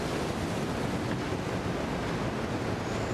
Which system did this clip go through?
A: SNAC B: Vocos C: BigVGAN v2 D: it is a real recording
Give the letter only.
D